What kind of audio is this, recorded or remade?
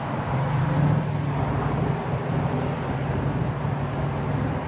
recorded